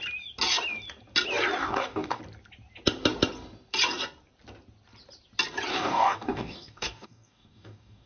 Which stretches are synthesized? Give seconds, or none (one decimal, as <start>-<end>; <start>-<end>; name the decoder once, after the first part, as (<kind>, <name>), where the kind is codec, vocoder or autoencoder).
1.6-2.2 (codec, DAC); 5.7-8.1